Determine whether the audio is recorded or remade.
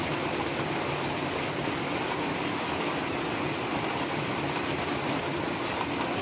recorded